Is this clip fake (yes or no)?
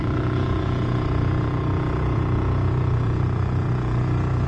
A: yes